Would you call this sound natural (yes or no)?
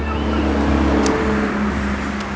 yes